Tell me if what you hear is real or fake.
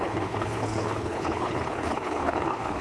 fake